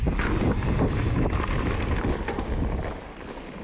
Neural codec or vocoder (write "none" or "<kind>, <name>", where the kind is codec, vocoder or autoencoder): none